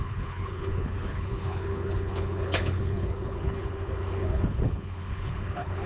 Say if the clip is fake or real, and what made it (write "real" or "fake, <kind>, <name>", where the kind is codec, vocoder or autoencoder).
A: fake, codec, HILCodec